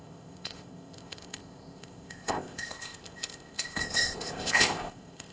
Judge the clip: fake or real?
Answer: fake